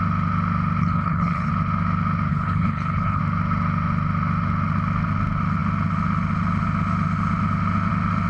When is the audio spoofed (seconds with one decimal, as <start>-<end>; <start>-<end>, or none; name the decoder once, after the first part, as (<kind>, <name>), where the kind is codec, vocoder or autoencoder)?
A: 0.8-1.5 (codec, HILCodec); 2.3-3.2